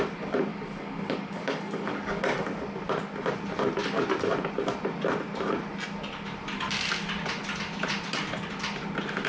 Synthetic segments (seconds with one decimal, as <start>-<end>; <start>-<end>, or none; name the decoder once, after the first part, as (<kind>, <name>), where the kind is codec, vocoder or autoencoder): 0.5-2.2 (codec, DAC)